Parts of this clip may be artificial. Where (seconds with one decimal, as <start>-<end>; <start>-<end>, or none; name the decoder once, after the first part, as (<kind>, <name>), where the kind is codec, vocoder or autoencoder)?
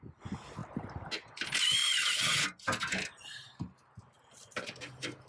0.6-1.1 (vocoder, BigVGAN v2); 1.8-5.3